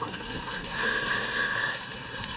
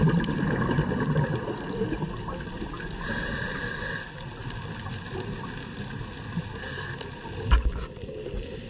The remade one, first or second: first